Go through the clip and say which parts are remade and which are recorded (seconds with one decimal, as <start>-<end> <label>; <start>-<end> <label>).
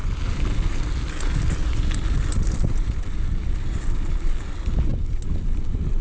0.0-6.0 recorded